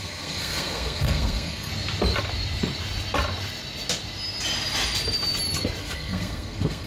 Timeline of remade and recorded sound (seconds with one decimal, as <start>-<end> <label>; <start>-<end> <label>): 0.0-1.7 remade; 1.7-5.8 recorded; 5.8-6.9 remade